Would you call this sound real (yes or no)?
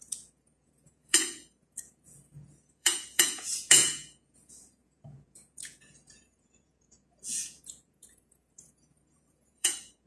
no